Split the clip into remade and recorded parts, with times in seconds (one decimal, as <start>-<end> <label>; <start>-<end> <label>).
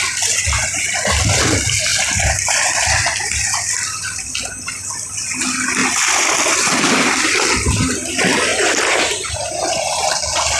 0.0-8.5 recorded; 8.5-10.2 remade; 10.2-10.6 recorded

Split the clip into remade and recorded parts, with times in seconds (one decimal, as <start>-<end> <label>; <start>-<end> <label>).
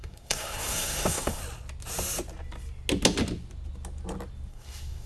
0.0-1.4 remade; 1.4-4.5 recorded; 4.5-5.1 remade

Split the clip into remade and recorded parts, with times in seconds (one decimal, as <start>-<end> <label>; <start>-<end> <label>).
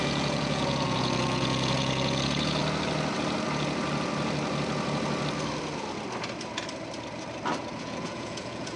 0.0-2.6 remade; 2.6-7.8 recorded; 7.8-8.8 remade